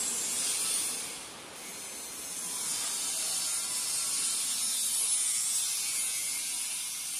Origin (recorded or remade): recorded